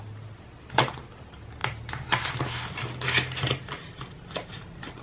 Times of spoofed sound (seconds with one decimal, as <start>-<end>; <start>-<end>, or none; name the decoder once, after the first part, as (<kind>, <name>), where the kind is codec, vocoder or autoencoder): none